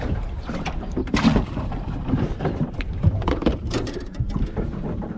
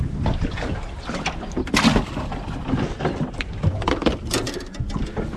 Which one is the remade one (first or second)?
first